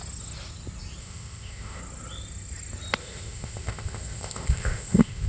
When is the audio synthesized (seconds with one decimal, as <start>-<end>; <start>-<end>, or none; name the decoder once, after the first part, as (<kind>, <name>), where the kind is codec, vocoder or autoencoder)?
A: 1.0-1.8 (codec, ZipCodec); 3.0-5.3